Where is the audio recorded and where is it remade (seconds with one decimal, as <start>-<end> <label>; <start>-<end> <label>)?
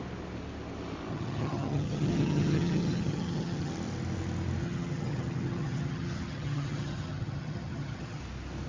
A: 0.0-1.1 recorded; 1.1-3.7 remade; 3.7-4.6 recorded; 4.6-8.2 remade; 8.2-8.7 recorded